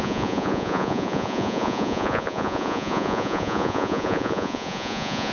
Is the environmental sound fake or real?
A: fake